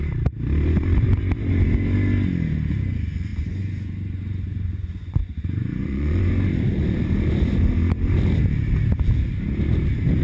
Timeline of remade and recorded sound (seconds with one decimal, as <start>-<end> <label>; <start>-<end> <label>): 0.0-3.3 recorded; 3.3-6.3 remade; 6.3-10.2 recorded